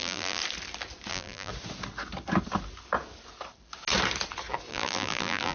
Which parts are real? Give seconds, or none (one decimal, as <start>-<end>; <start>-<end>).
0.4-1.1; 1.5-4.7